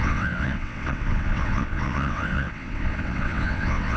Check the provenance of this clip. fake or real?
fake